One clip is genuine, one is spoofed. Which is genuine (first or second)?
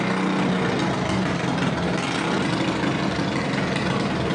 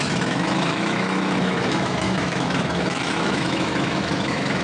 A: first